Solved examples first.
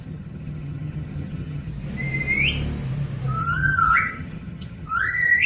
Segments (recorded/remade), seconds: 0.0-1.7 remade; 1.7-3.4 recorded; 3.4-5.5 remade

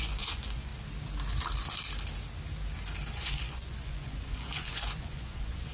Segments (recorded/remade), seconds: 0.0-0.7 remade; 0.7-3.1 recorded; 3.1-5.7 remade

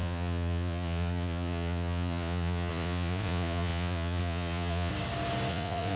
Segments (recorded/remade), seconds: 0.0-4.9 remade; 4.9-5.5 recorded; 5.5-6.0 remade

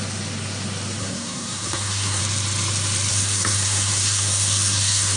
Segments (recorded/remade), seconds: 0.0-1.0 recorded; 1.0-2.2 remade; 2.2-3.1 recorded; 3.1-5.2 remade

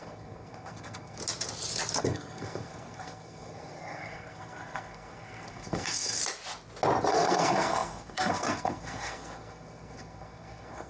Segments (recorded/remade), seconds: 0.0-1.2 remade; 1.2-2.0 recorded; 2.0-6.2 remade; 6.2-7.1 recorded; 7.1-10.9 remade